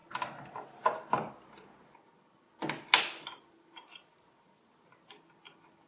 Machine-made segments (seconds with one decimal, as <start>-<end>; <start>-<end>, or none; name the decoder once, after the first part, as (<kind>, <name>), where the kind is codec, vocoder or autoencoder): none